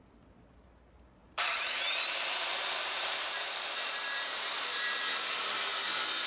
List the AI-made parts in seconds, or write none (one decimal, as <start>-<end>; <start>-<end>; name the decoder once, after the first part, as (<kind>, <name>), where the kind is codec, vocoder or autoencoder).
1.2-5.0 (vocoder, BigVGAN v2)